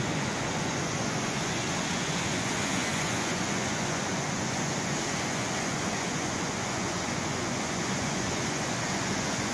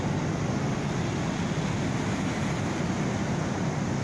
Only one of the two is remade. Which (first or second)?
first